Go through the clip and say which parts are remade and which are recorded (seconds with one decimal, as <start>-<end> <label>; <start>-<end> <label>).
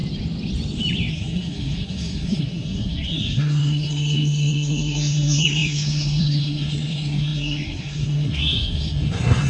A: 0.0-1.1 recorded; 1.1-9.5 remade